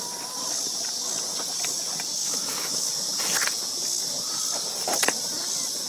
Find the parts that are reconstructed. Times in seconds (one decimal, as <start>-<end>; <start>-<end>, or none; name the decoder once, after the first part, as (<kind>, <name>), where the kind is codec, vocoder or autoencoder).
2.2-2.9 (autoencoder, DAC-VAE)